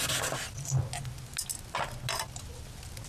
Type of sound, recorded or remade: recorded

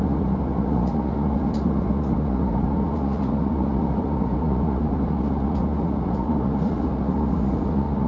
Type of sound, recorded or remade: remade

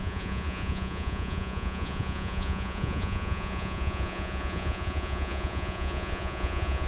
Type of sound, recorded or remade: remade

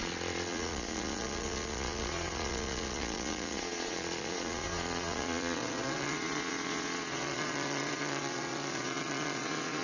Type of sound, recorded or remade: remade